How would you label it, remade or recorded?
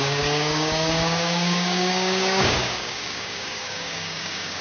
remade